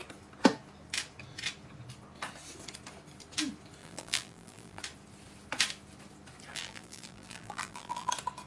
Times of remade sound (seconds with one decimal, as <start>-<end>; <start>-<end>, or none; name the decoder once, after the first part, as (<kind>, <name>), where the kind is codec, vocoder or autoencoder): 3.8-4.8 (vocoder, BigVGAN v2); 6.5-8.1